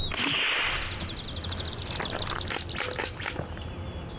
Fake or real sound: real